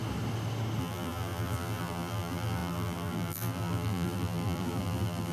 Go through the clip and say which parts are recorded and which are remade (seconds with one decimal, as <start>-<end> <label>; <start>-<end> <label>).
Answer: 0.0-0.8 recorded; 0.8-5.3 remade